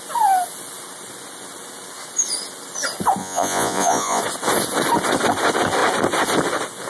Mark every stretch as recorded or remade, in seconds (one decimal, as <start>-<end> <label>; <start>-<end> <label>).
0.0-3.2 recorded; 3.2-4.2 remade; 4.2-6.9 recorded